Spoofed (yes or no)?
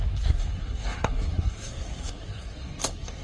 yes